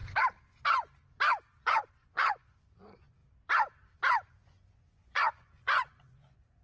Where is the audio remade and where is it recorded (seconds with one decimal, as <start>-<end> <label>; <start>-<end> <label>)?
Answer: 0.0-1.6 recorded; 1.6-3.2 remade; 3.2-4.3 recorded; 4.3-6.6 remade